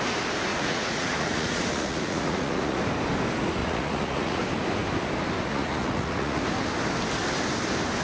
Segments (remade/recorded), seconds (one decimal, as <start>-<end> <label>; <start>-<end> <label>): 0.0-0.5 recorded; 0.5-2.8 remade; 2.8-3.6 recorded; 3.6-4.4 remade; 4.4-5.5 recorded; 5.5-6.4 remade; 6.4-8.0 recorded